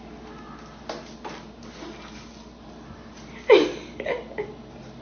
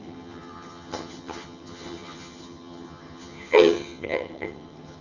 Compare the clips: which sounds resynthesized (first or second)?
second